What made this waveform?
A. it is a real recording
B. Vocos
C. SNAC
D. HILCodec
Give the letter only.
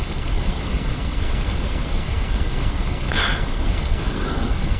C